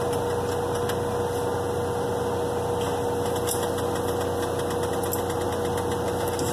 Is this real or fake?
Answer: real